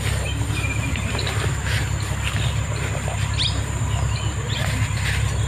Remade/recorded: recorded